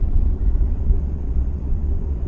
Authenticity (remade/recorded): remade